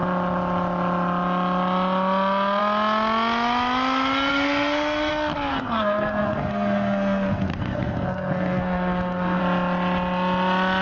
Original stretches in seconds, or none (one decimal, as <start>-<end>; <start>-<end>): 0.0-4.3; 5.1-5.5; 9.4-10.8